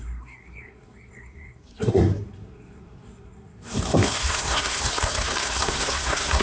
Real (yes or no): no